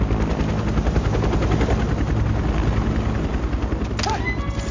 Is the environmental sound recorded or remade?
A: recorded